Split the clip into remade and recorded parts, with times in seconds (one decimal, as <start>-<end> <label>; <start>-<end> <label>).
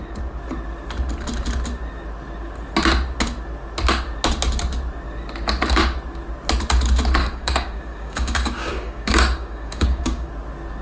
0.0-7.2 recorded; 7.2-10.3 remade; 10.3-10.8 recorded